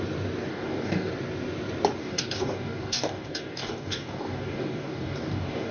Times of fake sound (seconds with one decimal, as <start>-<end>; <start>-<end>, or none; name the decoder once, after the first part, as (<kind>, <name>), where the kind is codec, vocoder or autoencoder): 0.5-1.1 (codec, DAC); 2.0-5.7